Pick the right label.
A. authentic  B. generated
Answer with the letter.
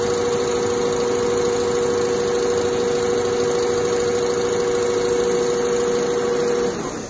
A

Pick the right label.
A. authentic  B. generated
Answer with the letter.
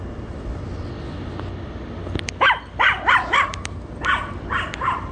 A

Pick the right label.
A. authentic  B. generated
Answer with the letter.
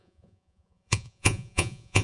B